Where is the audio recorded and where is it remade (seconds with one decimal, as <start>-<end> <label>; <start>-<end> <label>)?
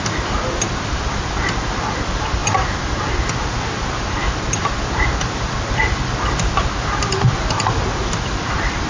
0.0-8.9 recorded